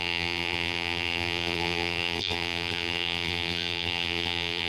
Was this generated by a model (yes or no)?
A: yes